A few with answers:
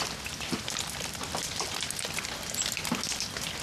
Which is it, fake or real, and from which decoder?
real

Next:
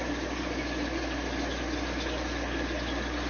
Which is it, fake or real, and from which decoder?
real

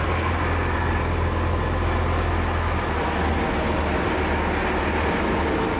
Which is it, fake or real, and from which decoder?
real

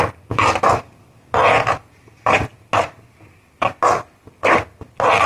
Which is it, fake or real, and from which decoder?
real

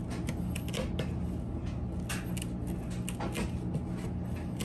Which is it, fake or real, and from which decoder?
real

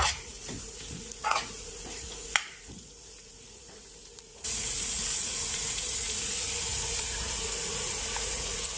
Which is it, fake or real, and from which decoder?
fake, vocoder, Vocos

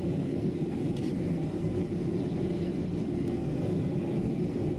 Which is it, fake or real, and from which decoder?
fake, codec, SNAC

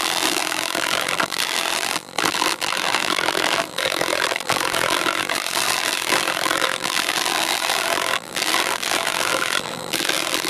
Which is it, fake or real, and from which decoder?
fake, vocoder, BigVGAN v2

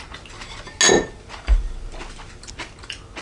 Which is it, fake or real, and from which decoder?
real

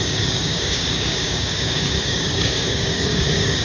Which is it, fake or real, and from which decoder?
fake, codec, DAC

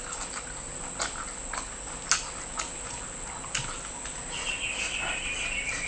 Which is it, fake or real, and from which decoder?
real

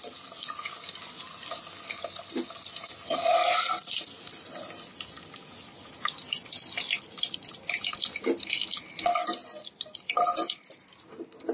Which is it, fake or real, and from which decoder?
real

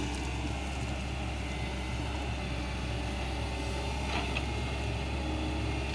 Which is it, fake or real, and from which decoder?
real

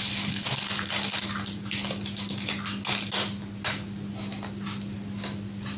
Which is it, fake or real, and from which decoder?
real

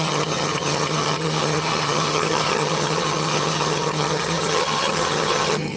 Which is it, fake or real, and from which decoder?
fake, vocoder, HiFi-GAN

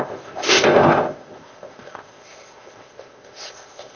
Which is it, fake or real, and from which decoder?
fake, codec, ZipCodec